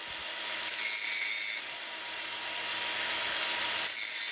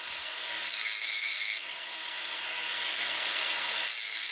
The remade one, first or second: second